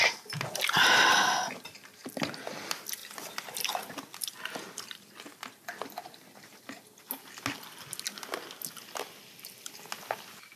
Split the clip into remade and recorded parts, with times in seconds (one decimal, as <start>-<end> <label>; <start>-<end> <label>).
0.0-3.0 recorded; 3.0-5.6 remade; 5.6-10.6 recorded